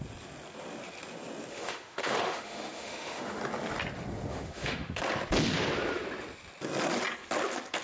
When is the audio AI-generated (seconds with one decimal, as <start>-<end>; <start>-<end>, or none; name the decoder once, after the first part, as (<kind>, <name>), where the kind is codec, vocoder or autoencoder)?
1.5-3.4 (autoencoder, DAC-VAE); 4.3-5.0